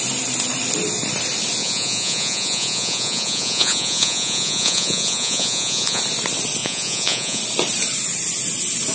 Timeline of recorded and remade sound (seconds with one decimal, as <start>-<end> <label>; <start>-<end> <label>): 0.0-1.6 recorded; 1.6-6.0 remade; 6.0-6.6 recorded; 6.6-7.4 remade; 7.4-8.9 recorded